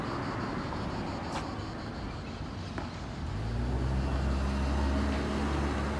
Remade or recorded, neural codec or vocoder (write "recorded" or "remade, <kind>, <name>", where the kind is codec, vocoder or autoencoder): recorded